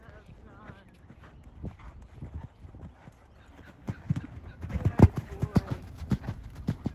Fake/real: real